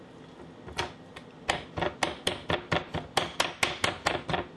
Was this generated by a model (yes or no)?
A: no